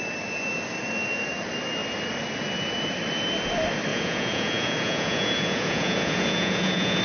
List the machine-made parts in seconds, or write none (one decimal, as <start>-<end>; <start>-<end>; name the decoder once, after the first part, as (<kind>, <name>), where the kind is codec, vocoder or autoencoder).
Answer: 3.9-7.0 (vocoder, Vocos)